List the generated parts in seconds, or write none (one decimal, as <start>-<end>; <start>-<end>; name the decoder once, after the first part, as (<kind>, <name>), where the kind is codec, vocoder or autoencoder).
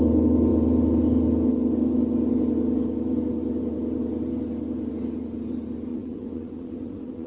5.9-7.3 (vocoder, WaveNeXt)